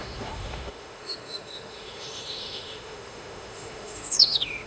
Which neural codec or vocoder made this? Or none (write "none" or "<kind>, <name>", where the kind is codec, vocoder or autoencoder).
autoencoder, DAC-VAE